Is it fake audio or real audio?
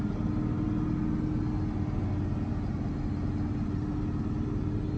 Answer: real